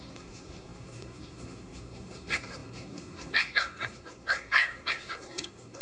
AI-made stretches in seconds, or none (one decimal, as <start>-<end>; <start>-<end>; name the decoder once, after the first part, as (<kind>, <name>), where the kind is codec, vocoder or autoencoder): 0.0-5.8 (codec, SNAC)